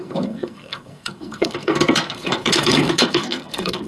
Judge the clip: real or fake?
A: fake